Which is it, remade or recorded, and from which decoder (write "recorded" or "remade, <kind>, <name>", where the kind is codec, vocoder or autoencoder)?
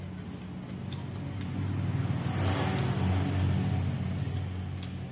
recorded